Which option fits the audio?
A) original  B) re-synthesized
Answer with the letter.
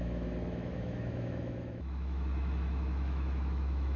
B